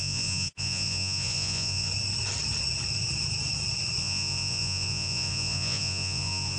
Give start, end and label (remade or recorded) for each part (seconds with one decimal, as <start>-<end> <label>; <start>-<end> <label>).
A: 0.0-1.9 remade; 1.9-4.0 recorded; 4.0-6.6 remade